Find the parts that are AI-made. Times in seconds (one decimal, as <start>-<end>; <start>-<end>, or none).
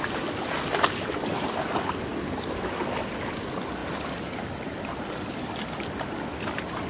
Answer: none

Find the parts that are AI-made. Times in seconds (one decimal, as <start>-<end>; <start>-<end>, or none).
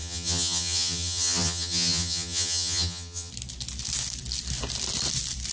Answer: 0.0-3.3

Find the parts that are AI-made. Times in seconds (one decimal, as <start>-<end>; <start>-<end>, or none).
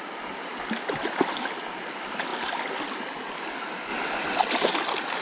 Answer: none